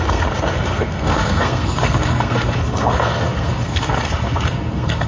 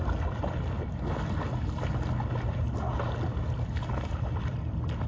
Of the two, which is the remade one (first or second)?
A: first